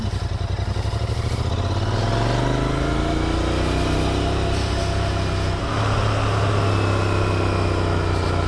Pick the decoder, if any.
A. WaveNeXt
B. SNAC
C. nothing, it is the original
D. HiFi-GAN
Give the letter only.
C